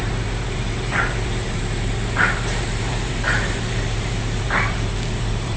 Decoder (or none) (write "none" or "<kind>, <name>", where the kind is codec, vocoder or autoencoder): vocoder, BigVGAN v2